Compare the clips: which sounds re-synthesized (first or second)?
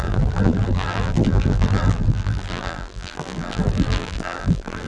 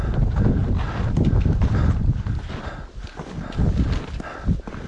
first